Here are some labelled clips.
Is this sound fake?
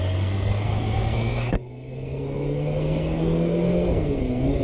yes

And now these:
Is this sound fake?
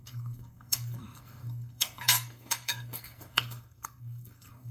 yes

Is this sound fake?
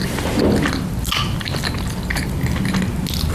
no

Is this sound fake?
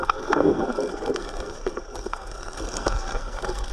yes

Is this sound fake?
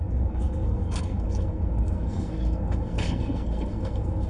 yes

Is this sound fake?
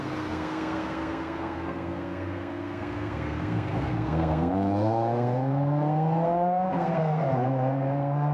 yes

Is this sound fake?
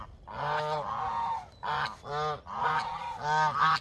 no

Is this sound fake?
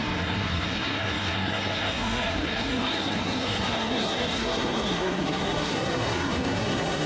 yes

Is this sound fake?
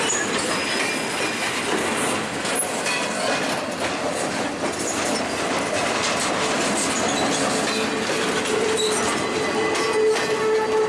no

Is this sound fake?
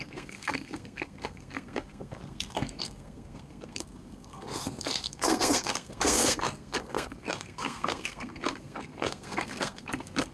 yes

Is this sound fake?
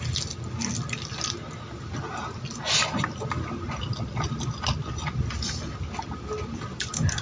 no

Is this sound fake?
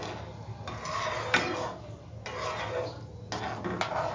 no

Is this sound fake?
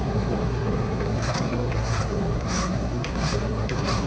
yes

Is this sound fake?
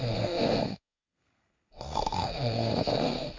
yes